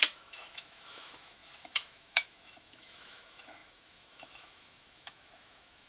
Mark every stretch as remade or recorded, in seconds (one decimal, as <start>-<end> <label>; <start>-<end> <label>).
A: 0.0-5.9 remade

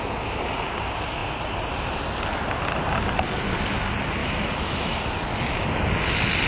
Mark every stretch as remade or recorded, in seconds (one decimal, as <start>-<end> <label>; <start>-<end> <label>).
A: 0.0-4.2 recorded; 4.2-5.0 remade; 5.0-6.5 recorded

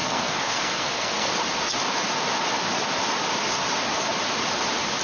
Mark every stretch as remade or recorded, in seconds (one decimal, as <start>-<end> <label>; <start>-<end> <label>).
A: 0.0-1.3 remade; 1.3-5.0 recorded

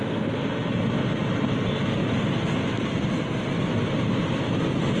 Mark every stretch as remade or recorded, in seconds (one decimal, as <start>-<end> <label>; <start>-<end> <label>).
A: 0.0-5.0 recorded

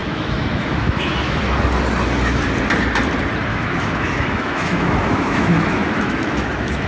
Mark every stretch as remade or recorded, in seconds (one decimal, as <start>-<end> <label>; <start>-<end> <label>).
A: 0.0-1.4 remade; 1.4-3.5 recorded; 3.5-6.9 remade

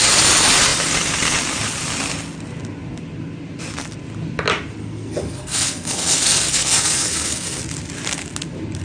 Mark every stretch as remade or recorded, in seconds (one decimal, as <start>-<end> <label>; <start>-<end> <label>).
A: 0.0-4.8 recorded; 4.8-7.6 remade; 7.6-8.8 recorded

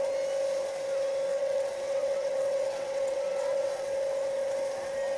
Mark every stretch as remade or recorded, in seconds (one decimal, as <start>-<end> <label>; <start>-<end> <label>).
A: 0.0-1.3 recorded; 1.3-3.9 remade; 3.9-5.2 recorded

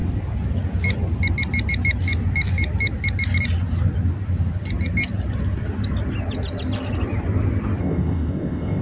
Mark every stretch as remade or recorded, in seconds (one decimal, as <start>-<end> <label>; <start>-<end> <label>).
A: 0.0-7.8 recorded; 7.8-8.8 remade